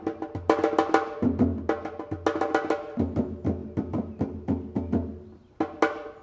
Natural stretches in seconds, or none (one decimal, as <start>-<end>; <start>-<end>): 0.0-6.2